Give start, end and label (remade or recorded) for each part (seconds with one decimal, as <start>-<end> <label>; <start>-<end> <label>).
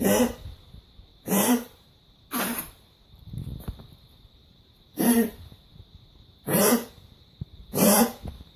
0.0-1.1 recorded; 1.1-3.5 remade; 3.5-4.4 recorded; 4.4-8.6 remade